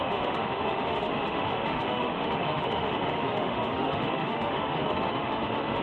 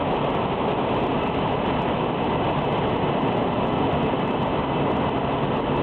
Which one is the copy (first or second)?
first